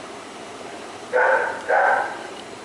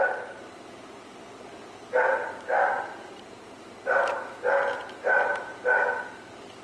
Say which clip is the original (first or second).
second